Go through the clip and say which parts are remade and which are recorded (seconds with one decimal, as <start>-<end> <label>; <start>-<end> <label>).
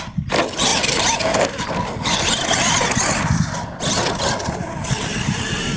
0.0-5.8 recorded